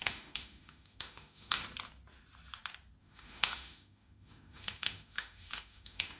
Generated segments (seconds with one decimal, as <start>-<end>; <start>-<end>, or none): 0.0-1.6; 3.0-6.2